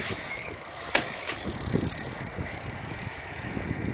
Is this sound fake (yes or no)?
yes